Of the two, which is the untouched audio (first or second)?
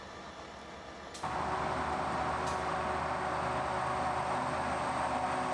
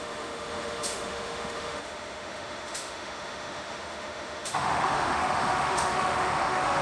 first